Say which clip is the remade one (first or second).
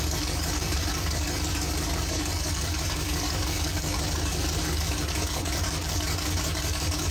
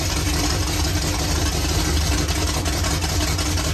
first